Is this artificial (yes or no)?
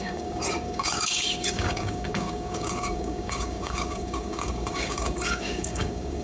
yes